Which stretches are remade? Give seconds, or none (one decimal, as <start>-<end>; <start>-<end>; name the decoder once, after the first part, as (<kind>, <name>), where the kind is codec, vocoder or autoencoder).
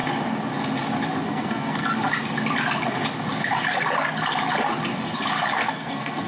1.3-1.9 (codec, SNAC); 5.7-6.3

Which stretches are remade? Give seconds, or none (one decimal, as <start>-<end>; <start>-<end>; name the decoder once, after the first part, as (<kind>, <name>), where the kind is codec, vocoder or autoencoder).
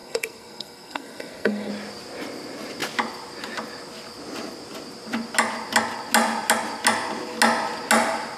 0.0-1.7 (codec, SNAC)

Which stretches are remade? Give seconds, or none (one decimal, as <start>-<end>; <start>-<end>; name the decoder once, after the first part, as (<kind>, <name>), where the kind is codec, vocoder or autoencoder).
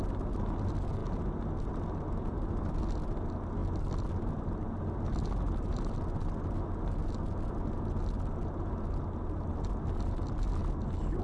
none